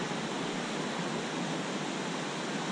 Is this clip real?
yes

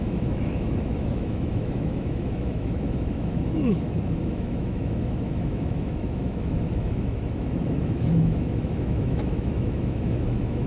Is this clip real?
no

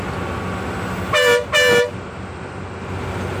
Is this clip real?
yes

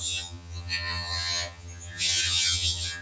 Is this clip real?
no